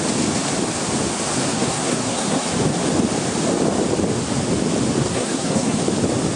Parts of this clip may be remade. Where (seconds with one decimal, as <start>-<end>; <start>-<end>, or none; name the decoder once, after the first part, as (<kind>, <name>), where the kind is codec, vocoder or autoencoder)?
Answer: 1.5-2.5 (codec, SNAC); 5.0-5.8